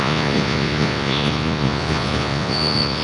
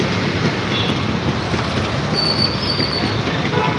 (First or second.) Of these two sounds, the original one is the second